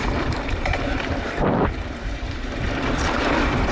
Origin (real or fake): fake